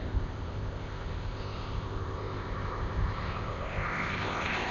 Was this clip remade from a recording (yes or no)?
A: yes